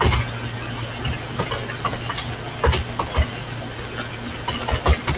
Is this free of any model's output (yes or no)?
yes